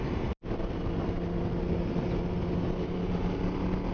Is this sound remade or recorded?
recorded